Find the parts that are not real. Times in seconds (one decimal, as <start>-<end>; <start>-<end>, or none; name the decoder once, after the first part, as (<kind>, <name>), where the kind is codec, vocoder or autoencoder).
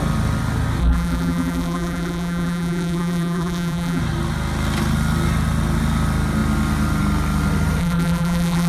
0.8-4.0 (vocoder, BigVGAN v2); 7.8-8.7